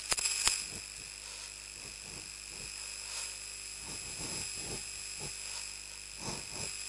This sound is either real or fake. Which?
real